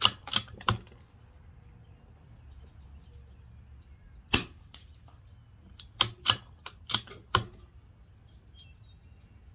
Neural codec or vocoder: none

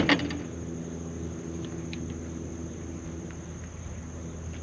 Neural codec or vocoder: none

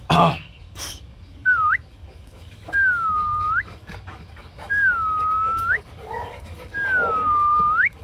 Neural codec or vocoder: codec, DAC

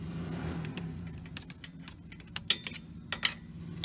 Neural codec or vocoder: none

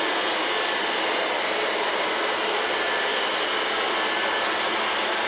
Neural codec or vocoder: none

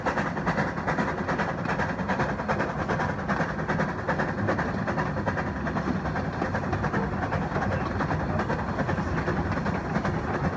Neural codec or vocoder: none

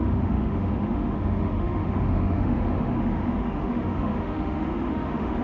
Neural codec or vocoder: autoencoder, DAC-VAE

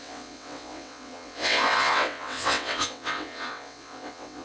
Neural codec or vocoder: vocoder, WaveNeXt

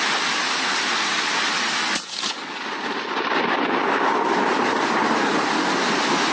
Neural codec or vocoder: none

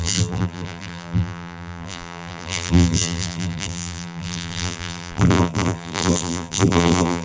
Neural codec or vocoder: vocoder, BigVGAN v2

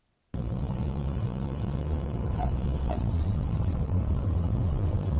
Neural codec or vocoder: vocoder, WaveNeXt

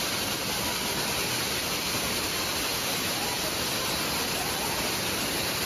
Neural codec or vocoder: none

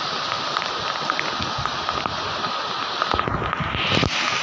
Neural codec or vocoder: none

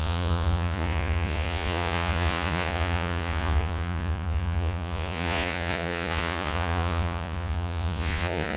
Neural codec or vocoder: vocoder, Vocos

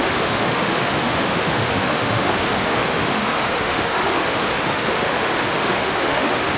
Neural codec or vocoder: autoencoder, DAC-VAE